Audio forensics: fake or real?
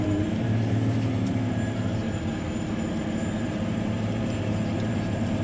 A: fake